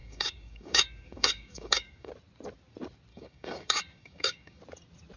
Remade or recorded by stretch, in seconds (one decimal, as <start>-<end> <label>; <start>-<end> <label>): 0.0-2.1 remade; 2.1-3.1 recorded; 3.1-4.6 remade; 4.6-5.2 recorded

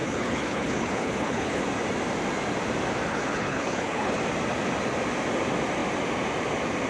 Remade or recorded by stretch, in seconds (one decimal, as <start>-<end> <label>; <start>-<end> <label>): 0.0-1.6 remade; 1.6-3.1 recorded; 3.1-4.2 remade; 4.2-6.9 recorded